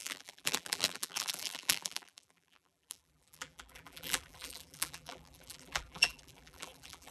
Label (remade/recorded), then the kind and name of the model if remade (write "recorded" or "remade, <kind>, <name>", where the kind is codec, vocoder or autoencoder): remade, vocoder, BigVGAN v2